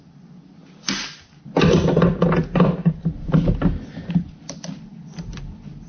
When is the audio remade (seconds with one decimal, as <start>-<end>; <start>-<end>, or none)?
none